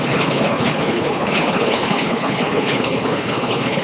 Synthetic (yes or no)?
yes